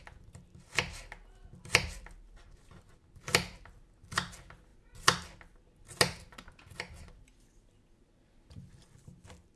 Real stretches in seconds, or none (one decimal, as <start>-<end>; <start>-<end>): 0.0-9.6